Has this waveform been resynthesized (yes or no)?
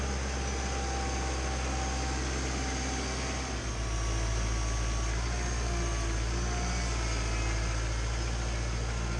no